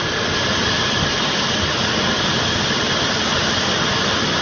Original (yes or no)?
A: yes